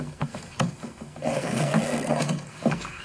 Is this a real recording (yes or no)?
no